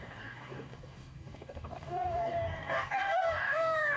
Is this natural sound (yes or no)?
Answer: no